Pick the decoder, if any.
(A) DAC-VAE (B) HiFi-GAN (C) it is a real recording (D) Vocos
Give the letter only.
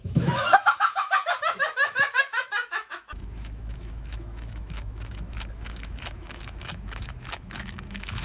A